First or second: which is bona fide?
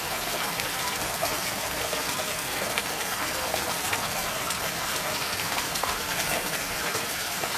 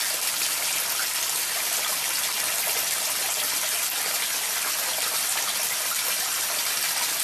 second